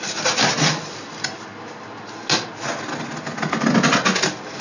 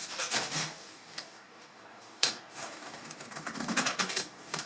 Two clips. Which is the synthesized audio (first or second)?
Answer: second